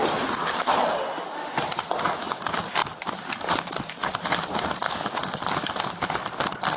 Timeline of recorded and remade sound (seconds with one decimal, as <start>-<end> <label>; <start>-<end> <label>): 0.0-6.8 recorded